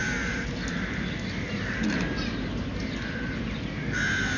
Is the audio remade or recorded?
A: recorded